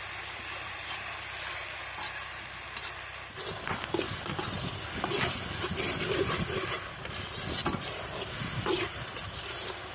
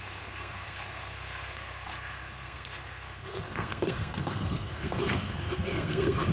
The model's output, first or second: second